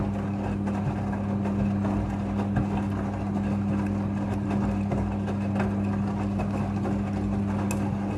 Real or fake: real